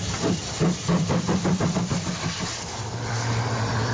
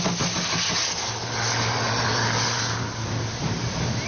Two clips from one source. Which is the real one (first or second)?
second